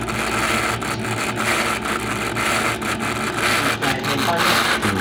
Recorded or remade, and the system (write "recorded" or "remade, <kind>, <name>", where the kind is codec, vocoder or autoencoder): recorded